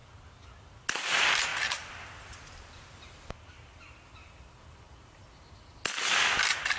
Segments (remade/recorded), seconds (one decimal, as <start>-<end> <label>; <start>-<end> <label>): 0.0-6.8 recorded